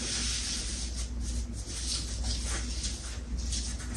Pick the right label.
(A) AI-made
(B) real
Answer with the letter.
B